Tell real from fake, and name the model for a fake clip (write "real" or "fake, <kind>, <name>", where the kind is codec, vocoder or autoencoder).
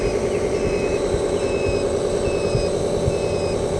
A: real